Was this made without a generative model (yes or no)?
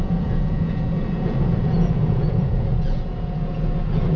no